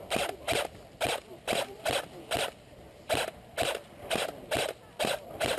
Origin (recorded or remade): recorded